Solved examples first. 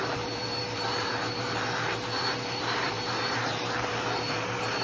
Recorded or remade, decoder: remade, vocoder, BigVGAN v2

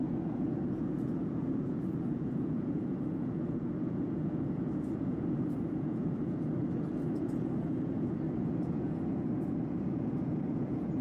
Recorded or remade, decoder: remade, vocoder, Vocos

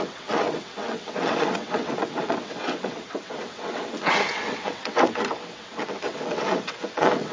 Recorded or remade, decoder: remade, vocoder, WaveNeXt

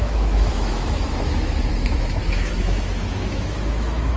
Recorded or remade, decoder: remade, autoencoder, DAC-VAE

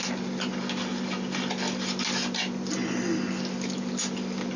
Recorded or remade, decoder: recorded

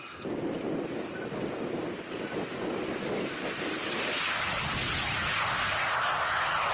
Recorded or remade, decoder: recorded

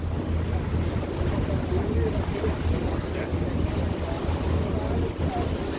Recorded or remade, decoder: recorded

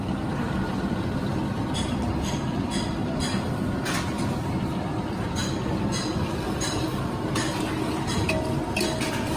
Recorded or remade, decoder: recorded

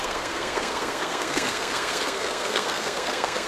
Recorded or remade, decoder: remade, codec, SNAC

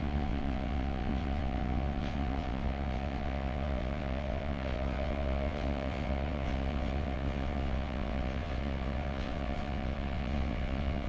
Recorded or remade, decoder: remade, vocoder, WaveNeXt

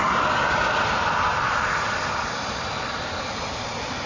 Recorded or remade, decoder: recorded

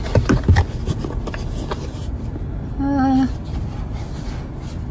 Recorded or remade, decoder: recorded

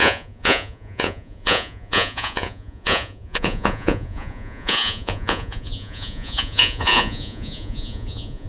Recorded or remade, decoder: remade, vocoder, Vocos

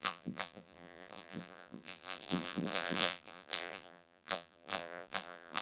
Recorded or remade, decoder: remade, vocoder, BigVGAN v2